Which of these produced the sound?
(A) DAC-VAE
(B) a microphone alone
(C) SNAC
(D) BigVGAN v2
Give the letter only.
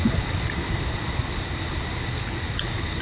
B